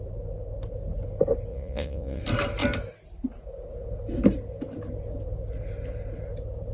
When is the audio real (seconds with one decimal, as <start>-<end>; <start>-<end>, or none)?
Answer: 0.0-1.5; 2.2-6.7

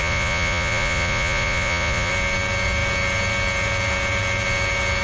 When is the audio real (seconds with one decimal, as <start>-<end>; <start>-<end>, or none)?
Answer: 2.1-5.0